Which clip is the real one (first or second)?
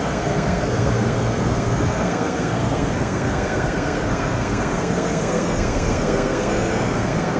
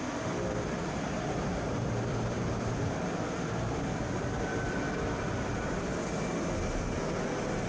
second